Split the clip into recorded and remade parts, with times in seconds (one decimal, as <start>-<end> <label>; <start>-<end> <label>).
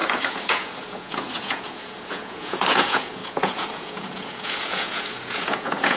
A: 0.0-6.0 remade